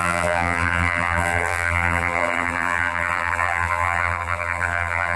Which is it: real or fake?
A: fake